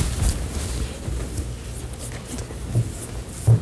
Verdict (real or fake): real